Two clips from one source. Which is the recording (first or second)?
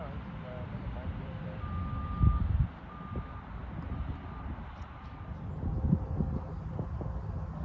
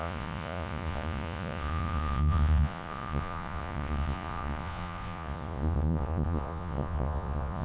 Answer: first